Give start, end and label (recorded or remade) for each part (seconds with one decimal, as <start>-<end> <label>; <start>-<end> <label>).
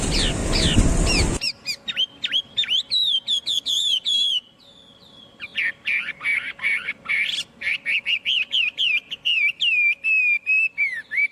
0.0-0.4 remade; 0.4-1.9 recorded; 1.9-4.3 remade; 4.3-4.9 recorded; 4.9-11.3 remade